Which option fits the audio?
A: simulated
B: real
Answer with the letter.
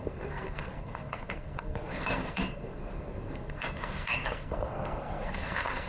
A